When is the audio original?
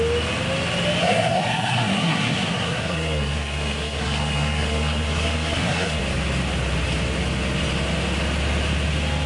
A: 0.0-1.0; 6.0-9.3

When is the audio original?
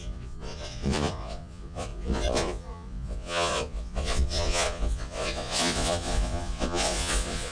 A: none